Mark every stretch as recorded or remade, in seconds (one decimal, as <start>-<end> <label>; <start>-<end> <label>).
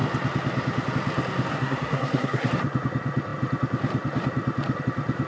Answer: 0.0-1.5 recorded; 1.5-2.5 remade; 2.5-5.3 recorded